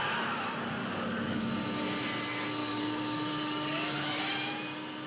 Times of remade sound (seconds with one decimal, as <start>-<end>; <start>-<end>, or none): 0.8-1.4; 2.6-4.2